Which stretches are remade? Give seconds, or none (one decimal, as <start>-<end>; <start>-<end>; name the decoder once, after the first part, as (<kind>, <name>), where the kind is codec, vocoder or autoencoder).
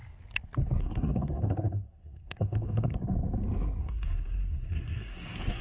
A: 0.8-3.0 (codec, SNAC); 3.8-5.6